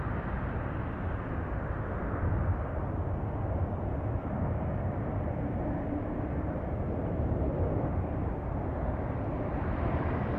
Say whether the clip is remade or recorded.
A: recorded